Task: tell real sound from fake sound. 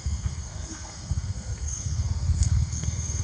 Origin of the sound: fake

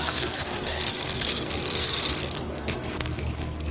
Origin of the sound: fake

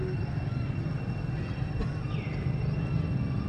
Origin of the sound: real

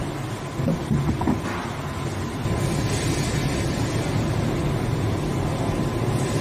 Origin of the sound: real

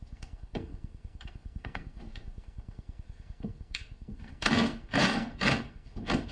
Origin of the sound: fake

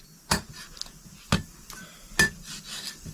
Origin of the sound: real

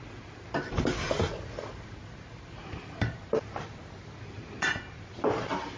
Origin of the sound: real